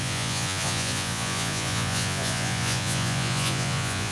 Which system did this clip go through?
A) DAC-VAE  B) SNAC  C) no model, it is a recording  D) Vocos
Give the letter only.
D